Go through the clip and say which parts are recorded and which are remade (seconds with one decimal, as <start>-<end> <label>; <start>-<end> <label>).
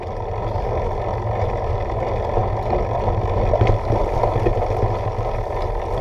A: 0.0-6.0 recorded